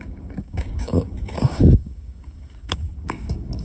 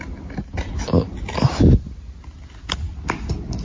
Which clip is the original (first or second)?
second